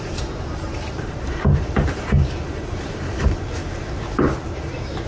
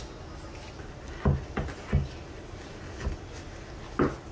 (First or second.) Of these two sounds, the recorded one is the second